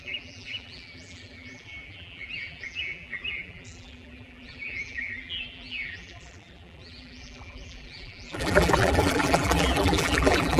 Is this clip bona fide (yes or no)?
no